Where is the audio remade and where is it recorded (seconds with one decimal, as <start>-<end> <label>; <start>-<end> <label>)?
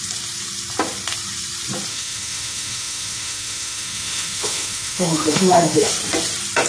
0.0-1.9 recorded; 1.9-5.9 remade; 5.9-6.7 recorded